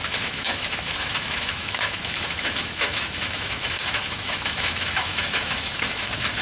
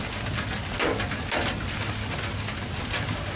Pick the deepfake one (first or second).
first